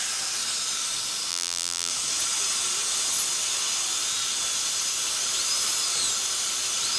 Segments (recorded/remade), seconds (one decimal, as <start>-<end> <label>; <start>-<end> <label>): 0.0-1.3 recorded; 1.3-1.9 remade; 1.9-7.0 recorded